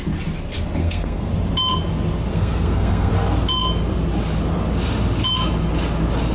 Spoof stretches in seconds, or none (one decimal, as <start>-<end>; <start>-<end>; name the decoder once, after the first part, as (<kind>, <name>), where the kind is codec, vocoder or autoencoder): 0.8-1.3 (codec, SNAC); 2.3-3.1